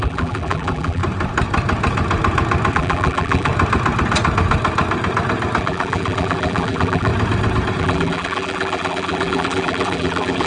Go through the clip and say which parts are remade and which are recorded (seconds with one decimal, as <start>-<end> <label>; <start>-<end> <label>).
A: 0.0-1.0 remade; 1.0-2.7 recorded; 2.7-3.5 remade; 3.5-5.6 recorded; 5.6-7.1 remade; 7.1-7.8 recorded; 7.8-10.5 remade